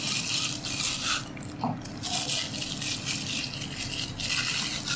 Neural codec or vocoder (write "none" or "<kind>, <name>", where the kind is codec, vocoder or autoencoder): none